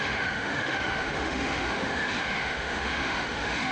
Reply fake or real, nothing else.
fake